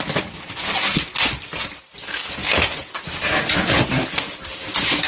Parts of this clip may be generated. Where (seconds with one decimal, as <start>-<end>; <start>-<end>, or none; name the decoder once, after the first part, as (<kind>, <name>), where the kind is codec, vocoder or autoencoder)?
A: none